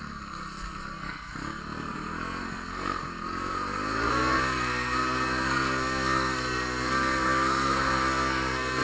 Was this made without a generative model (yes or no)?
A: no